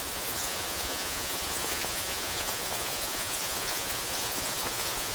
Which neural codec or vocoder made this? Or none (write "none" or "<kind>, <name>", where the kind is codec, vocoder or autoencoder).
vocoder, Vocos